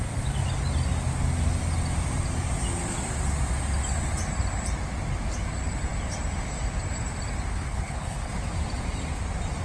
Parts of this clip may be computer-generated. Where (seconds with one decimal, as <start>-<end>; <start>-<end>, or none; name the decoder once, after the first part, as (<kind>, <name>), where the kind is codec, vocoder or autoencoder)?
7.5-8.3 (codec, HILCodec)